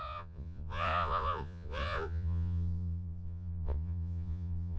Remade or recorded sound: remade